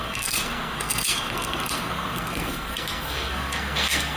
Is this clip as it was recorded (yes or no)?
no